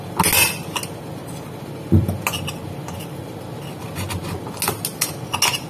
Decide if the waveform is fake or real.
real